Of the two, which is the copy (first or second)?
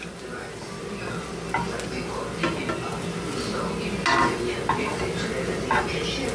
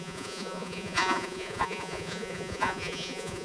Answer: second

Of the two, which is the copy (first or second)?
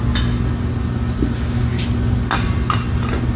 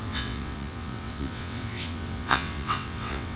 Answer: second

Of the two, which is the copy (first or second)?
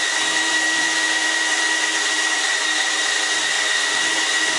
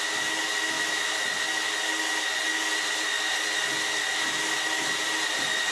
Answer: first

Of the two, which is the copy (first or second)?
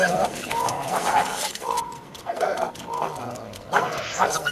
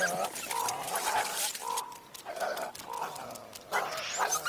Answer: first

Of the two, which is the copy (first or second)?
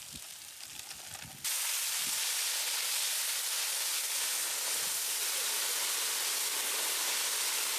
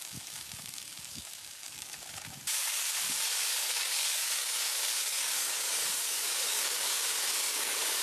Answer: second